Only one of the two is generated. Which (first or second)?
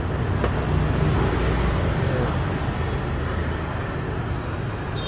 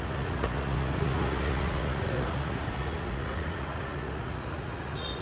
second